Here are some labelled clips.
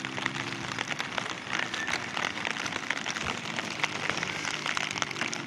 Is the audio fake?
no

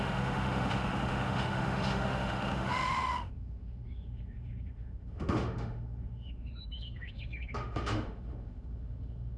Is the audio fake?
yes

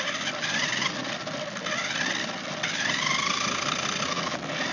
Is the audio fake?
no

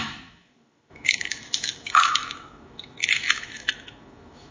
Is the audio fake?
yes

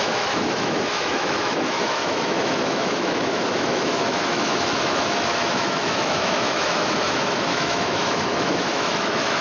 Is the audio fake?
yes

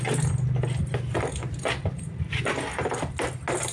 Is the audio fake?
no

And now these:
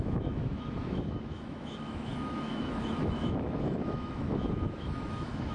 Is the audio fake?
yes